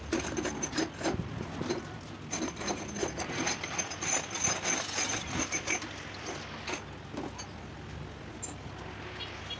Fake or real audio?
real